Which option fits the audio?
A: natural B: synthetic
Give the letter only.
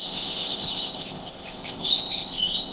B